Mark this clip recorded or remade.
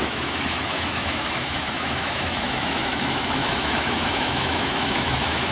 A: remade